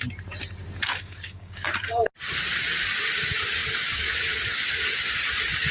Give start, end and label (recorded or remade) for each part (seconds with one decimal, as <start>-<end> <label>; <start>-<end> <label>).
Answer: 0.0-0.9 recorded; 0.9-2.0 remade; 2.0-5.7 recorded